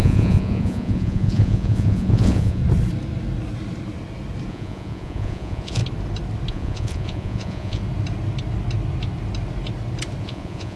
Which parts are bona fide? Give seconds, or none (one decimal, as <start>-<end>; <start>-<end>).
2.6-4.5; 5.8-6.5; 7.8-10.2